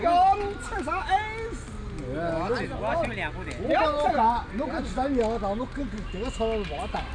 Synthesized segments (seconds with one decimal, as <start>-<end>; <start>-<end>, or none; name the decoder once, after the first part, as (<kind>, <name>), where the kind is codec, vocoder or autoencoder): none